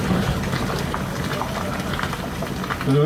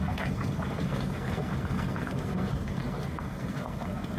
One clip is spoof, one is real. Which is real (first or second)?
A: first